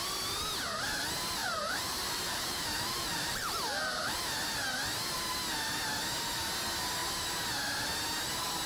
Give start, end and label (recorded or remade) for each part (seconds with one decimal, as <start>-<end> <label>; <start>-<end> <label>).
0.0-1.4 recorded; 1.4-4.2 remade; 4.2-8.7 recorded